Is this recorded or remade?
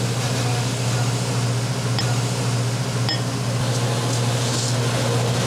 recorded